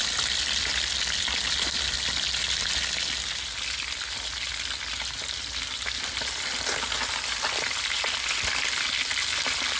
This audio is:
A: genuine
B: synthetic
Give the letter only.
A